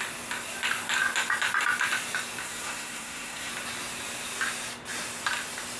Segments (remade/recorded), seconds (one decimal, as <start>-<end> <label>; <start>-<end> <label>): 0.0-2.4 recorded; 2.4-3.5 remade; 3.5-5.8 recorded